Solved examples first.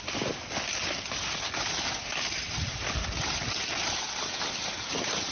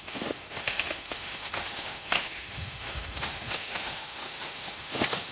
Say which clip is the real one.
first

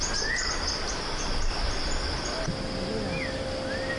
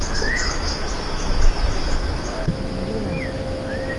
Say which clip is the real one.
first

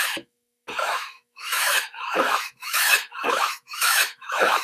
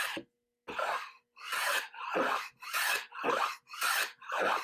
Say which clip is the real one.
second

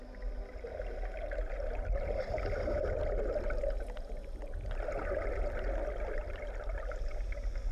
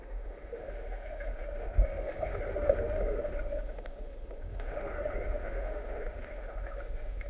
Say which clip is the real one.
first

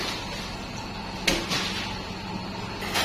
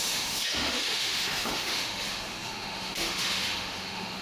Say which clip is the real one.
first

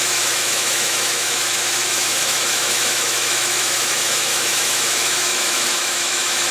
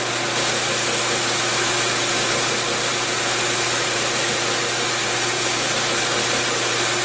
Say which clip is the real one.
second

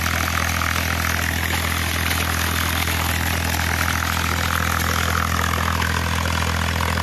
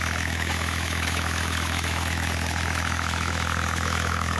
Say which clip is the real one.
first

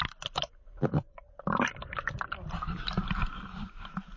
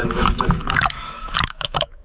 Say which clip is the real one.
first